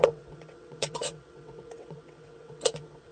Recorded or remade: remade